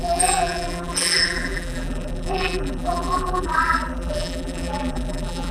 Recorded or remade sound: remade